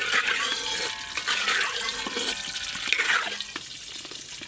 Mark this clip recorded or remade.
recorded